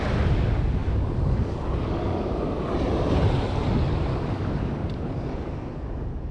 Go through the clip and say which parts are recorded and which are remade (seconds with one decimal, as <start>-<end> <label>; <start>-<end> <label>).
0.0-0.8 recorded; 0.8-2.5 remade; 2.5-4.1 recorded; 4.1-6.3 remade